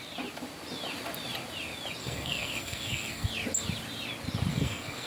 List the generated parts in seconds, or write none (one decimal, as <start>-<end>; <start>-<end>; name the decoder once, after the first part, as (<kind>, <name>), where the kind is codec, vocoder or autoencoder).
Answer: 2.0-3.3 (codec, SNAC); 4.5-5.1